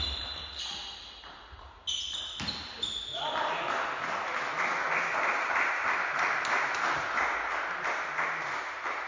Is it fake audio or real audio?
real